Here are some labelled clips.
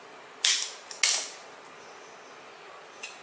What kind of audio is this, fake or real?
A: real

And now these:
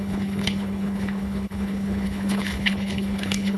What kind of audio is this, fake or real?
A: fake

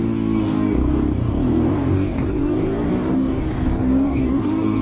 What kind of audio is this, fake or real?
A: fake